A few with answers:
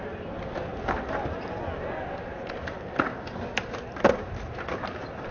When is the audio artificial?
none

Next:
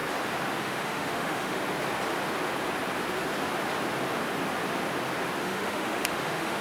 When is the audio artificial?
0.6-1.6 (autoencoder, DAC-VAE); 5.4-6.6

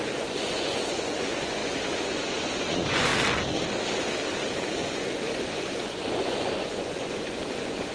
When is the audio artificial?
0.0-3.1 (vocoder, Vocos); 4.5-7.9

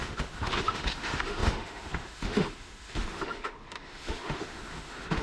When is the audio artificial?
0.0-5.2 (autoencoder, DAC-VAE)

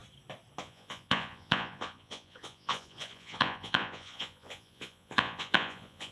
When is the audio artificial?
0.6-6.1 (vocoder, Vocos)